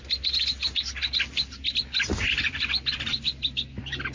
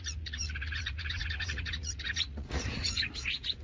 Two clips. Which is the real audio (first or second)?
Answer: first